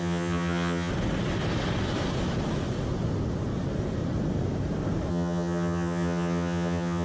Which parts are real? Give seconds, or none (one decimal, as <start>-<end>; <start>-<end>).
0.9-5.1